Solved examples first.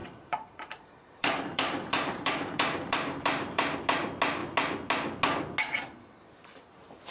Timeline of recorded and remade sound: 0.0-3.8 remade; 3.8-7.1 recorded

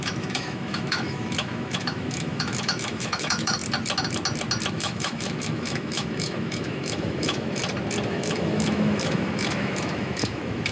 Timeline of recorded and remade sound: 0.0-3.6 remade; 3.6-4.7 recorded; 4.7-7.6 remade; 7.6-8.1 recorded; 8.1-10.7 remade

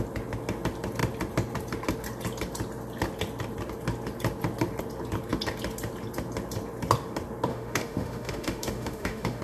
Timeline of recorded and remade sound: 0.0-7.5 recorded; 7.5-9.4 remade

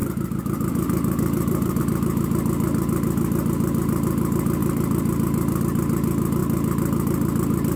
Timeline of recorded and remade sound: 0.0-1.8 remade; 1.8-4.6 recorded; 4.6-5.6 remade; 5.6-7.8 recorded

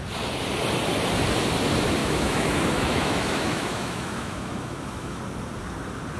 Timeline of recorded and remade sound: 0.0-2.0 recorded; 2.0-5.2 remade; 5.2-6.2 recorded

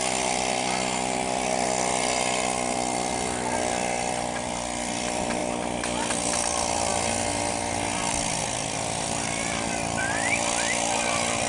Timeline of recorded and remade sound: 0.0-5.4 remade; 5.4-6.1 recorded; 6.1-6.9 remade; 6.9-8.4 recorded; 8.4-11.5 remade